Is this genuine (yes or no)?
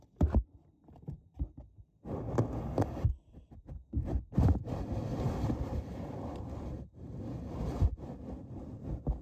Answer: yes